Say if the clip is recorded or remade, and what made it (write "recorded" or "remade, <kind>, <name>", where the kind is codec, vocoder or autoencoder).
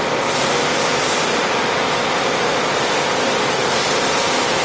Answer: recorded